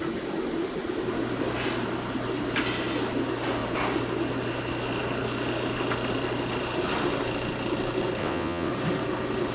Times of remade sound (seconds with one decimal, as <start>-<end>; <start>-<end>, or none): 8.2-8.7